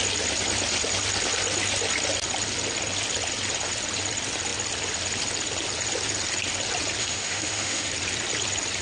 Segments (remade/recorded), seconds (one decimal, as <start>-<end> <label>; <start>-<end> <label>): 0.0-7.0 recorded; 7.0-7.9 remade; 7.9-8.8 recorded

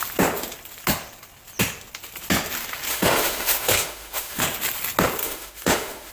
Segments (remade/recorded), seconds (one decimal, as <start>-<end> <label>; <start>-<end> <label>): 0.0-2.9 recorded; 2.9-4.4 remade; 4.4-5.2 recorded; 5.2-6.1 remade

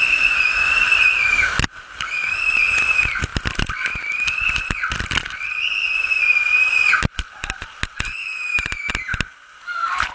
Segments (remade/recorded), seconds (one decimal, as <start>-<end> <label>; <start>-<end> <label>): 0.0-8.1 recorded; 8.1-8.9 remade; 8.9-10.1 recorded

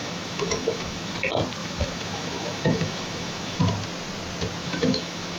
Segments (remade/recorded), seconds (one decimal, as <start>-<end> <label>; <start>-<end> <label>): 0.0-1.1 remade; 1.1-1.6 recorded; 1.6-3.6 remade; 3.6-4.6 recorded; 4.6-5.4 remade

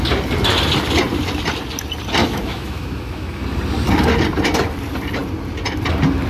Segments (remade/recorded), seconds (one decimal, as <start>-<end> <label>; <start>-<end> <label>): 0.0-2.2 recorded; 2.2-3.4 remade; 3.4-6.3 recorded